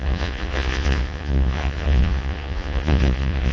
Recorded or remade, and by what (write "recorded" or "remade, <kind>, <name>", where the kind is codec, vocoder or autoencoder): remade, vocoder, Vocos